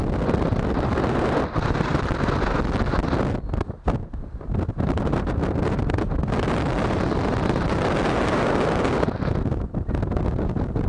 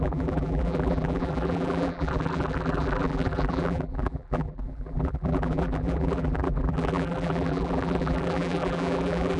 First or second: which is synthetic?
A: second